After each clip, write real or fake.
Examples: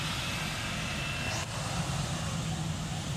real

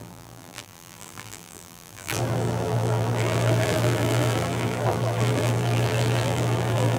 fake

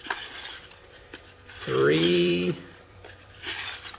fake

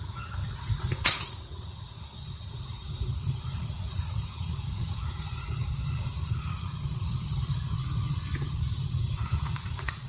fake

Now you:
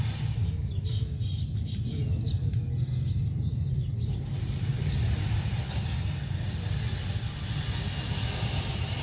real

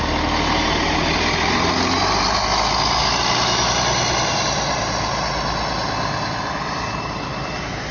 real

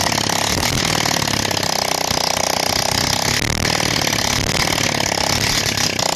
real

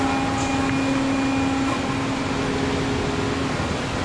real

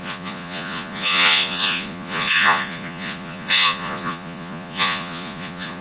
fake